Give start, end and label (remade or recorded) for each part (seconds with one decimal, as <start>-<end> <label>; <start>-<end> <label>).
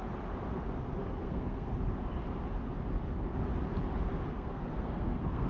0.0-1.0 recorded; 1.0-1.7 remade; 1.7-4.3 recorded; 4.3-5.5 remade